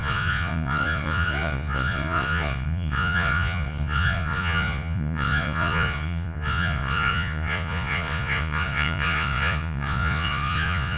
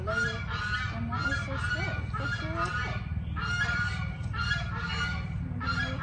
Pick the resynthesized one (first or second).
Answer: first